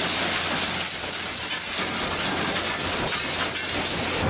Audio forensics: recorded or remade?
recorded